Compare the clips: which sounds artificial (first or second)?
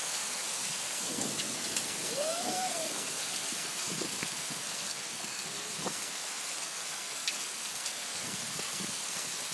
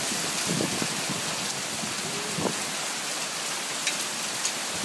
first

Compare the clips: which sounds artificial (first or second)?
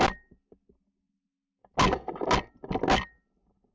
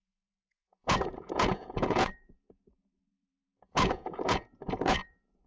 second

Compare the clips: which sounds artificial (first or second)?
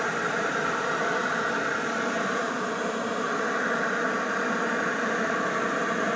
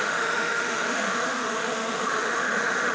second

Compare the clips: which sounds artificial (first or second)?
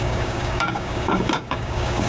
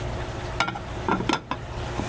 first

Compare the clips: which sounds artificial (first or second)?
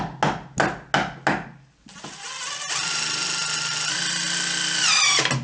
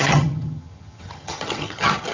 second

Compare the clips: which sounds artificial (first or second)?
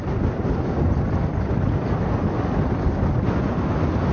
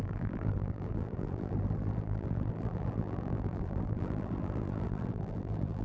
second